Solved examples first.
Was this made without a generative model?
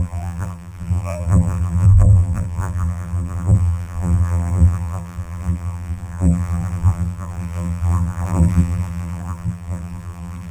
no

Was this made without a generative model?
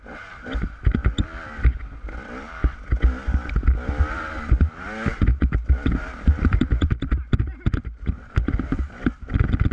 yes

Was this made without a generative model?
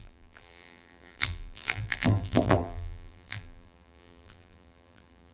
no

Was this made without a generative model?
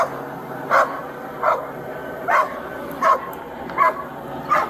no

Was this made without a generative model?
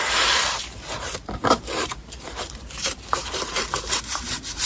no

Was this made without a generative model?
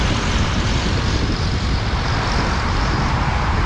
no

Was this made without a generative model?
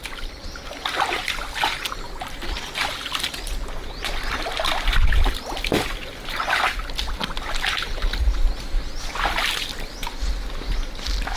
yes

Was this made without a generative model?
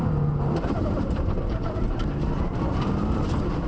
no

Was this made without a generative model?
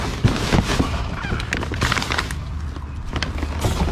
yes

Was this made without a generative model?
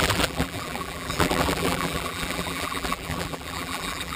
no